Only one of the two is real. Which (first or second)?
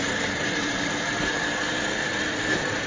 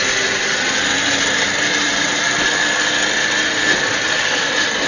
second